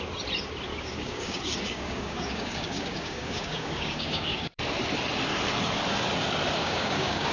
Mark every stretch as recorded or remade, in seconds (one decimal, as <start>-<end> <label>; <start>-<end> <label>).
0.0-0.7 recorded; 0.7-4.6 remade; 4.6-6.6 recorded; 6.6-7.3 remade